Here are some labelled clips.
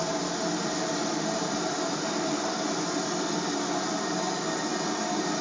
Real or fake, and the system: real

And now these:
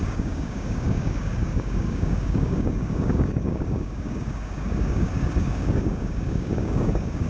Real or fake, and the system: fake, codec, DAC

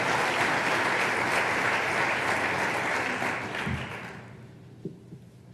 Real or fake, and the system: real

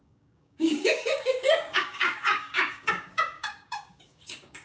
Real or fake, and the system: fake, codec, DAC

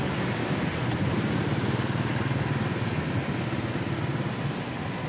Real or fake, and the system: real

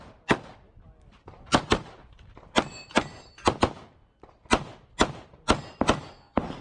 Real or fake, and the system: real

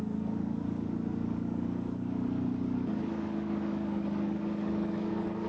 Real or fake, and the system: fake, codec, DAC